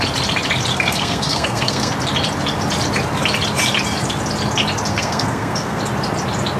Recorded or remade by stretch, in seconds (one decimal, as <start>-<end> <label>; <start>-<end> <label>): 0.0-0.7 recorded; 0.7-1.9 remade; 1.9-4.9 recorded; 4.9-5.8 remade; 5.8-6.6 recorded